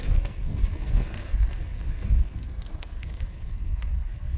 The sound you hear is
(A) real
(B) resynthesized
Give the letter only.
B